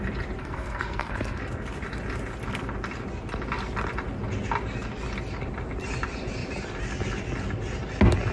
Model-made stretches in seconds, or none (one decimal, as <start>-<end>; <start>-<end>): 0.4-1.4